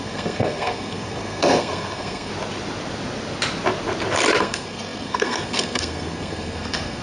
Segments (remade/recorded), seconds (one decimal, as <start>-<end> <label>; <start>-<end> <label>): 0.0-2.3 remade; 2.3-4.4 recorded; 4.4-7.0 remade